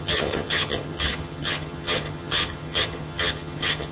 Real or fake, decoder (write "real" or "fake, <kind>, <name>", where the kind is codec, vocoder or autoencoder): fake, vocoder, HiFi-GAN